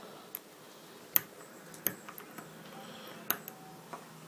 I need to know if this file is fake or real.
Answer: real